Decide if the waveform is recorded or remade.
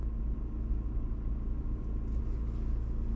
recorded